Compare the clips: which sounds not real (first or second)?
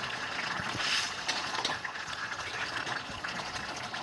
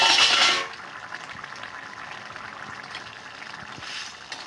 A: first